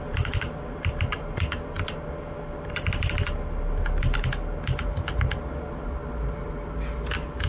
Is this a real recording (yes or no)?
yes